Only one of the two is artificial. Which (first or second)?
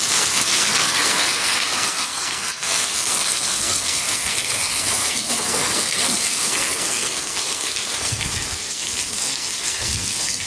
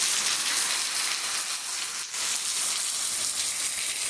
first